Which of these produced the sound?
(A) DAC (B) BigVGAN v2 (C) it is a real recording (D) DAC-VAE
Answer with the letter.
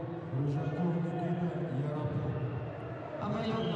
C